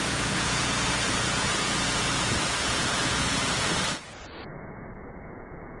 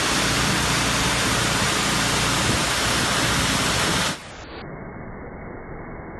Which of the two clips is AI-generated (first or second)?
first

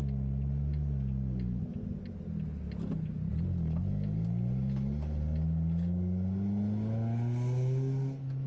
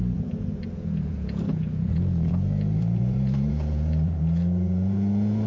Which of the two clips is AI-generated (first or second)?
second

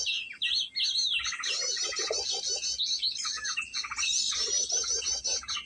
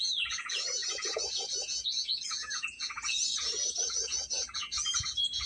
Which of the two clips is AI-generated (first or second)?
second